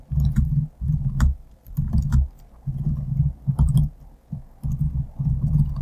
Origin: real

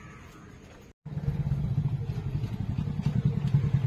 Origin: real